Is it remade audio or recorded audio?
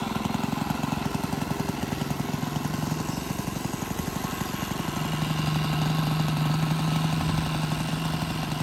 recorded